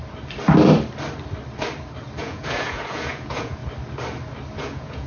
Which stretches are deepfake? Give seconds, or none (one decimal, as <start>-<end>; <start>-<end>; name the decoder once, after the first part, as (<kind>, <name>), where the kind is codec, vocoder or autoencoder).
2.2-3.6 (vocoder, Vocos); 4.6-5.1